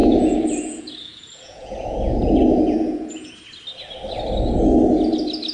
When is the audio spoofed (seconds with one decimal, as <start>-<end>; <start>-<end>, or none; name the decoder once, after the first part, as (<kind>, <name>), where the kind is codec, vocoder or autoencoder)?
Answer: 0.0-3.3 (vocoder, Vocos)